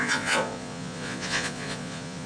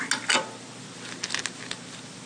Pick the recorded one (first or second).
second